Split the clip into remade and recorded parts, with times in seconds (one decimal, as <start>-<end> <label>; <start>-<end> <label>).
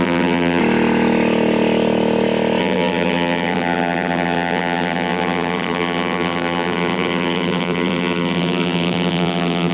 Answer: 0.0-0.6 remade; 0.6-2.6 recorded; 2.6-9.7 remade